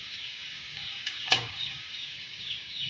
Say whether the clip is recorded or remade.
remade